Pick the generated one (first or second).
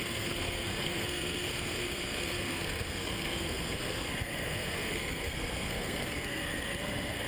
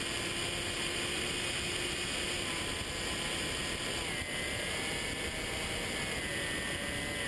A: first